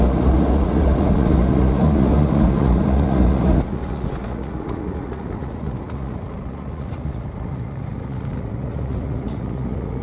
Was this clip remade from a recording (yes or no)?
yes